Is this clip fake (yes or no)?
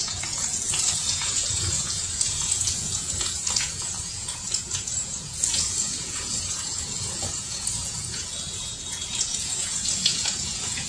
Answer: yes